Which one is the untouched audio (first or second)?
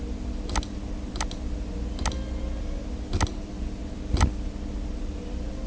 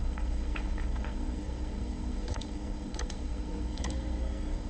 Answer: first